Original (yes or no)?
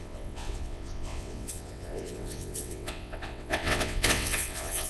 no